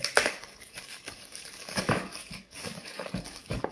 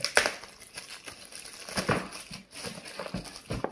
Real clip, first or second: second